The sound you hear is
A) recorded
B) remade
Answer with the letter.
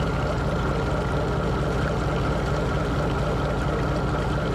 A